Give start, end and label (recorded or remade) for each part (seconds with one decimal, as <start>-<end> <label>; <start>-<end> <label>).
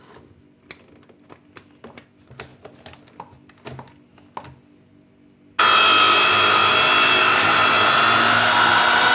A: 0.0-9.1 recorded